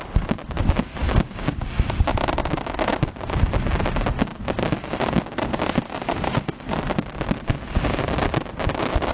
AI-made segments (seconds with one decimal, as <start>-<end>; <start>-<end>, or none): none